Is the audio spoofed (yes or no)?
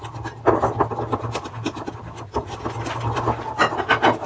no